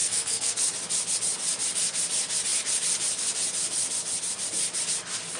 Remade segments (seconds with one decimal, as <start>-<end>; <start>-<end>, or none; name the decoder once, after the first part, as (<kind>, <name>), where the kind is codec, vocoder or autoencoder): 0.0-0.6 (codec, SNAC)